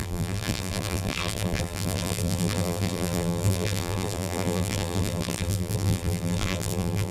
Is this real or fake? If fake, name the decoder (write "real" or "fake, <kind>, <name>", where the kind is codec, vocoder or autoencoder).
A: fake, vocoder, BigVGAN v2